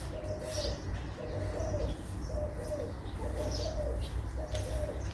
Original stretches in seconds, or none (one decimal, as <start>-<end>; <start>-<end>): 0.0-5.1